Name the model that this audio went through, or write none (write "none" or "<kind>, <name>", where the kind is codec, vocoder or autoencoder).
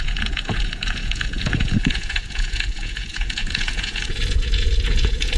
vocoder, Vocos